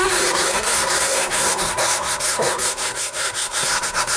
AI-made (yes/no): yes